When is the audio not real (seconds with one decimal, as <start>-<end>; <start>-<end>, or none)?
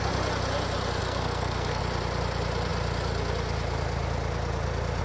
1.0-1.8